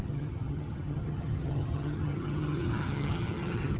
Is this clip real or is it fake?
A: fake